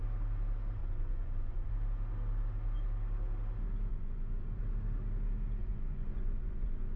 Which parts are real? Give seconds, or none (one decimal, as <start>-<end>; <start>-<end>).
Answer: 0.0-0.8; 1.7-3.9; 4.6-5.6

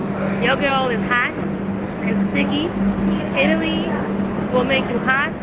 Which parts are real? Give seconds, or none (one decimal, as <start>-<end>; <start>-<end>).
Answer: 0.0-5.4